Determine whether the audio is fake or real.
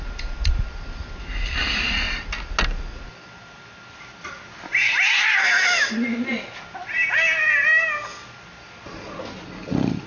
real